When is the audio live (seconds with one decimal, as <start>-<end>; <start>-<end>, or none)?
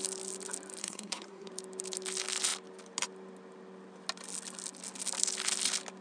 0.0-0.8; 1.5-6.0